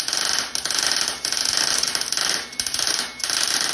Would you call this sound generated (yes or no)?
no